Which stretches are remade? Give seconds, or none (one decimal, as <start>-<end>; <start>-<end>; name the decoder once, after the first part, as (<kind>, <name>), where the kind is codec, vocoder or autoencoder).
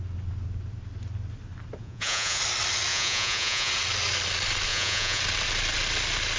1.8-2.4 (vocoder, Vocos); 2.9-3.7; 4.7-5.2